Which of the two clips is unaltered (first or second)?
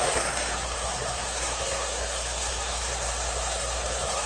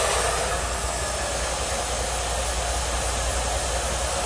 second